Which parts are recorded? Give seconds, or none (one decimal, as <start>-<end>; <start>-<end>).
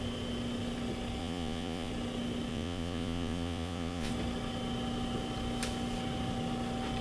0.0-1.2; 1.9-2.5; 4.1-7.0